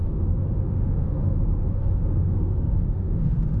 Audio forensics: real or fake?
fake